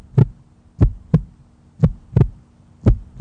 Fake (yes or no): no